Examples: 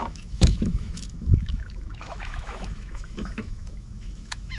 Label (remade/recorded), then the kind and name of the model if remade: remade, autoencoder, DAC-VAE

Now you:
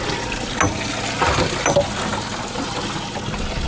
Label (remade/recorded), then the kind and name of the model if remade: recorded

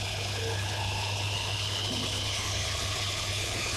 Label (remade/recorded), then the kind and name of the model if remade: remade, codec, HILCodec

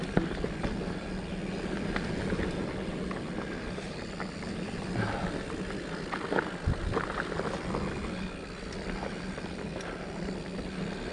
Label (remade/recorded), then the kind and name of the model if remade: recorded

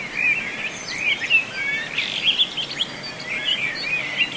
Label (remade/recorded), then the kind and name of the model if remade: recorded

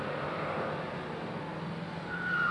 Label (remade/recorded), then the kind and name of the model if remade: recorded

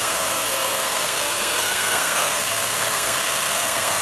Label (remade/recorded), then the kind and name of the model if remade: remade, codec, SNAC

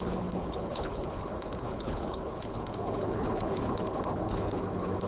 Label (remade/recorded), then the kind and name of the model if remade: remade, codec, HILCodec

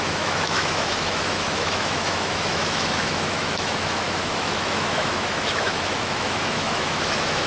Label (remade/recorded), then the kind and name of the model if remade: remade, autoencoder, DAC-VAE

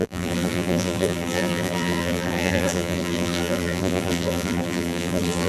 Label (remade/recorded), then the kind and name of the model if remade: remade, vocoder, BigVGAN v2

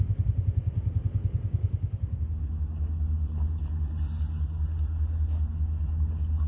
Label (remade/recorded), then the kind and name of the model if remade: recorded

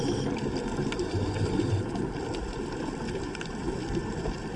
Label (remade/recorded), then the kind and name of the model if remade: recorded